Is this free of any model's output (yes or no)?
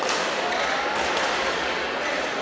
no